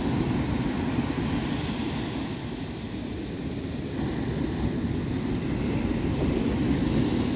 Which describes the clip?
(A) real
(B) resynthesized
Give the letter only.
A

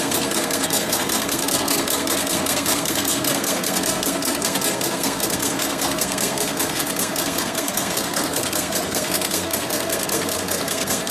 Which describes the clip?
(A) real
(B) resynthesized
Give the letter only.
B